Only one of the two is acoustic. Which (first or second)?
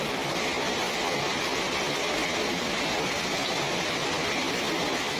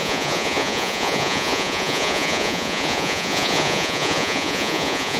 first